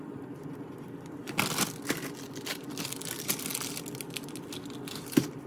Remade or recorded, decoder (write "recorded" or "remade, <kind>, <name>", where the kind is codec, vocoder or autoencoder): recorded